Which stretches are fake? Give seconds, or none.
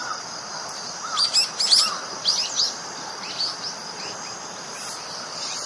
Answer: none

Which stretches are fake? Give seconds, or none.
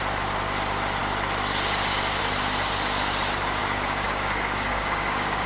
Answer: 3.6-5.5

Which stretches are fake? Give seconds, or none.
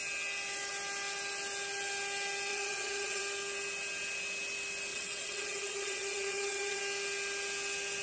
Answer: 2.5-3.2; 4.9-6.8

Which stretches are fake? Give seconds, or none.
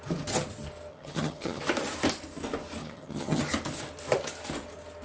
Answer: 0.9-1.6; 2.8-3.4